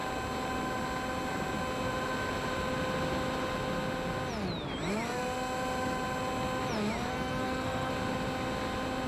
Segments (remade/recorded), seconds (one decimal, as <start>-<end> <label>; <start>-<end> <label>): 0.0-7.1 recorded; 7.1-7.9 remade; 7.9-9.1 recorded